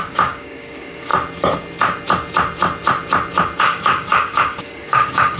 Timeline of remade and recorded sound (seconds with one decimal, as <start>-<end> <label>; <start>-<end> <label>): 0.0-1.1 remade; 1.1-3.6 recorded; 3.6-5.4 remade